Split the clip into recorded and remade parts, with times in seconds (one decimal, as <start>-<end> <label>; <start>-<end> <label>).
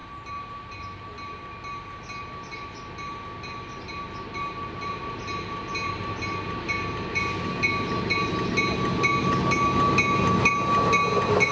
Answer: 0.0-11.5 recorded